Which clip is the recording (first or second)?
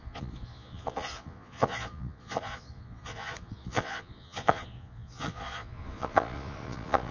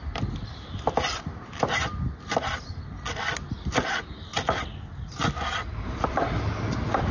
second